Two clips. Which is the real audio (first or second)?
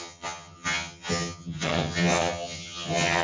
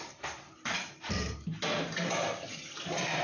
second